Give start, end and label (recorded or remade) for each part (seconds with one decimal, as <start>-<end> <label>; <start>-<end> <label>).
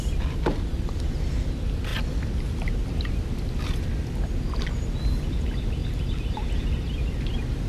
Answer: 0.0-7.7 recorded